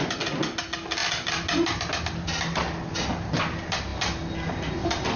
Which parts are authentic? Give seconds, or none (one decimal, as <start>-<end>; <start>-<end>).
0.0-5.2